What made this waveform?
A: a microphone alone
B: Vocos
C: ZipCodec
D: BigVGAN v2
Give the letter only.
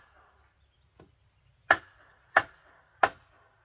A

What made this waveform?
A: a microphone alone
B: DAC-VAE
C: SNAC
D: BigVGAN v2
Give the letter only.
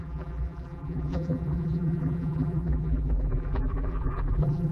D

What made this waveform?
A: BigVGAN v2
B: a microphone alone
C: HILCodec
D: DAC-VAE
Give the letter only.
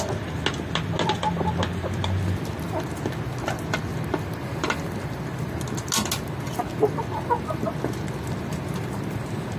B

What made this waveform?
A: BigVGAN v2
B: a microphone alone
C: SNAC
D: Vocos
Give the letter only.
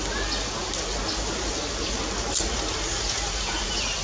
B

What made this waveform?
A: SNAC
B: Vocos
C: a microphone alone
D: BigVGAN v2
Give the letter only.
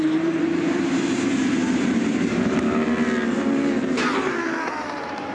D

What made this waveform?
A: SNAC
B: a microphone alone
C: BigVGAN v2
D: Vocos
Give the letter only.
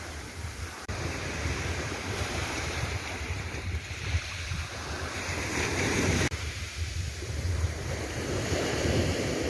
C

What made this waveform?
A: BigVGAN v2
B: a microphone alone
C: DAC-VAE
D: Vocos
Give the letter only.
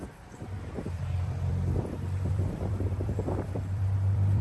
A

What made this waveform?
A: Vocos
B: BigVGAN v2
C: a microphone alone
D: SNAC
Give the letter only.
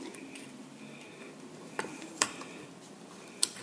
C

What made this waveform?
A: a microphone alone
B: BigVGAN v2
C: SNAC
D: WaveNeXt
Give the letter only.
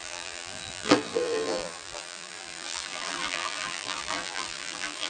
B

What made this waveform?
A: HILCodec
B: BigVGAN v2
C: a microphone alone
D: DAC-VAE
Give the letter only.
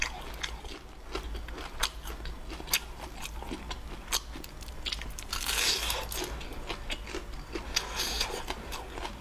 C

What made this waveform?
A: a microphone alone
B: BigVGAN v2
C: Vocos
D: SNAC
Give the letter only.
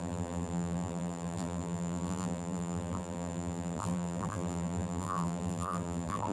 B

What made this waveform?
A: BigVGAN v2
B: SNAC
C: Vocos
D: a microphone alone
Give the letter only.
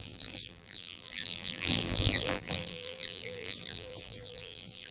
A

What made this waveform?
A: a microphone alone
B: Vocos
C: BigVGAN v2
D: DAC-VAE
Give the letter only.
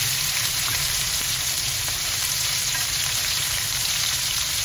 C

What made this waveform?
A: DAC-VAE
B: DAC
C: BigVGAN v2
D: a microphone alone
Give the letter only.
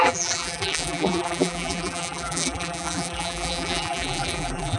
C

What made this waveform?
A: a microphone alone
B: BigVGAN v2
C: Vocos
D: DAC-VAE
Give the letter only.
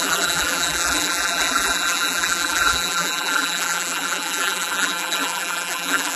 B